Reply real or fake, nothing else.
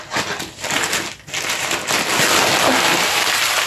real